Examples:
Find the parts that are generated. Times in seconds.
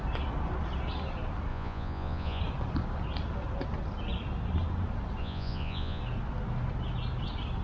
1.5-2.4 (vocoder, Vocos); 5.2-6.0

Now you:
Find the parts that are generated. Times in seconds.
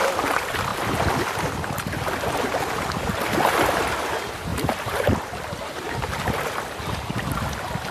4.5-6.2 (vocoder, BigVGAN v2)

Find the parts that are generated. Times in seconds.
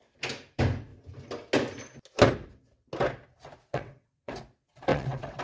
3.7-4.3 (vocoder, WaveNeXt); 4.9-5.4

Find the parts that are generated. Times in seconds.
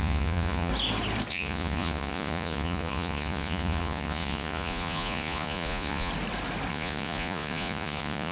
0.0-0.7 (vocoder, Vocos); 1.3-6.1; 6.7-8.3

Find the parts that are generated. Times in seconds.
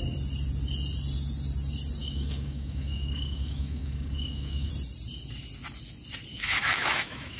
2.0-4.7 (autoencoder, DAC-VAE); 6.3-7.4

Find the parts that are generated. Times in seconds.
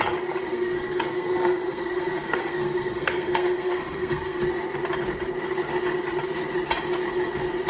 0.5-4.4 (codec, SNAC)